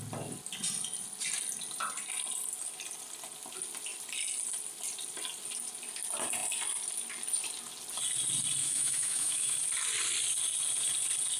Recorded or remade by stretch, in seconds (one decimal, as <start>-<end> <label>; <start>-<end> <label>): 0.0-8.6 recorded; 8.6-9.6 remade; 9.6-11.4 recorded